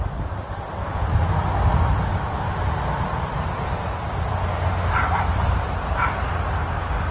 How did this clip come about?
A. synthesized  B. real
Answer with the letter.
B